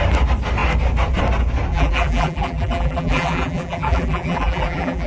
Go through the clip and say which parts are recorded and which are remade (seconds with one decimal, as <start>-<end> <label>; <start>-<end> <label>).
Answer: 0.0-1.7 recorded; 1.7-5.1 remade